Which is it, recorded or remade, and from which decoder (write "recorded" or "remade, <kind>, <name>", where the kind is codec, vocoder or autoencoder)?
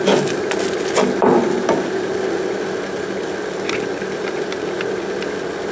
recorded